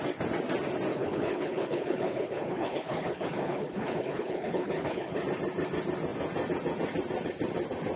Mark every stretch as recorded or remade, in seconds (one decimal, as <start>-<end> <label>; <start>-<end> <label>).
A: 0.0-0.9 recorded; 0.9-5.2 remade; 5.2-8.0 recorded

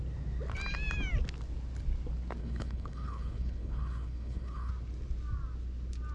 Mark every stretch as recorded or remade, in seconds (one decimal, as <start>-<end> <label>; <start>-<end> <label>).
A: 0.0-2.4 recorded; 2.4-4.7 remade; 4.7-6.1 recorded

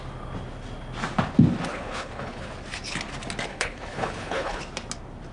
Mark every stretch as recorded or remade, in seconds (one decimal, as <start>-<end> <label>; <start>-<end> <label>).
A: 0.0-1.7 recorded; 1.7-2.5 remade; 2.5-3.5 recorded; 3.5-4.6 remade; 4.6-5.3 recorded

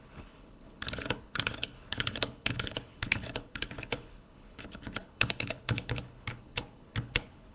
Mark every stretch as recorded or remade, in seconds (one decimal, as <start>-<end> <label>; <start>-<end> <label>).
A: 0.0-7.5 remade

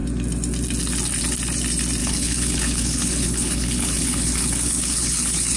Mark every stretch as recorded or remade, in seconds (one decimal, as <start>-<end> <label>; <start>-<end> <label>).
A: 0.0-2.0 recorded; 2.0-5.6 remade

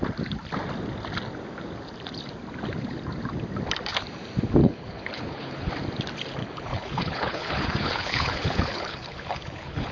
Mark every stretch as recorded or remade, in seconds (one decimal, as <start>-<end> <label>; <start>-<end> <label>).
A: 0.0-4.6 recorded; 4.6-5.7 remade; 5.7-6.4 recorded; 6.4-9.9 remade